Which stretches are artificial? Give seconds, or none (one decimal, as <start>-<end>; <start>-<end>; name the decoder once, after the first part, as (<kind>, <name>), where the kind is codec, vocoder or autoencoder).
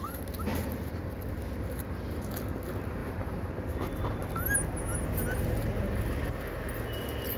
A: 3.0-3.5 (vocoder, BigVGAN v2)